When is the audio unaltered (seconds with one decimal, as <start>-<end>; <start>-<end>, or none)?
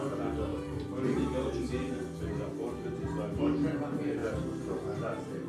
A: 0.0-5.5